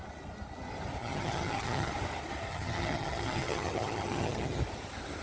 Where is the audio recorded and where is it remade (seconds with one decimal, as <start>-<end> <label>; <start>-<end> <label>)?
0.0-1.0 recorded; 1.0-1.9 remade; 1.9-2.5 recorded; 2.5-4.6 remade; 4.6-5.2 recorded